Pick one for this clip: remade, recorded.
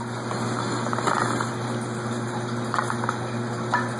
recorded